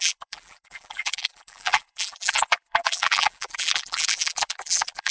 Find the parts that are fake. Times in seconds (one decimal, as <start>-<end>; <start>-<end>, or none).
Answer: 0.0-5.1